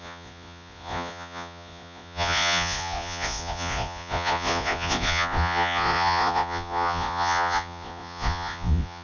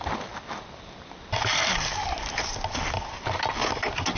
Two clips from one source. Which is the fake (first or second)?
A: first